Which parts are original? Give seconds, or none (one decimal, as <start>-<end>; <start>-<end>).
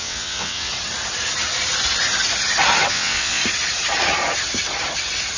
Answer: 0.7-2.9; 3.4-5.4